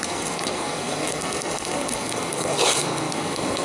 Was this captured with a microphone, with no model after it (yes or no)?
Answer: no